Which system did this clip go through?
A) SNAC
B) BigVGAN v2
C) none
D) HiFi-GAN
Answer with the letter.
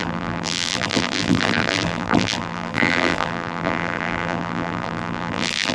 B